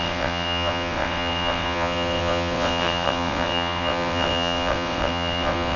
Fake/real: fake